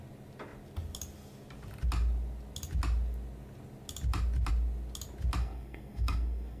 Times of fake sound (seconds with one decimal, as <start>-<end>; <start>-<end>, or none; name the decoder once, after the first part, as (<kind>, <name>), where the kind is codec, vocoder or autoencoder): 5.4-6.6 (codec, SNAC)

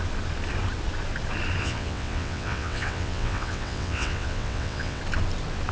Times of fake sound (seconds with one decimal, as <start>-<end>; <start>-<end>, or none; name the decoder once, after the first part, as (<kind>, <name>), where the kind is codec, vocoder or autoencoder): 1.6-5.0 (vocoder, WaveNeXt)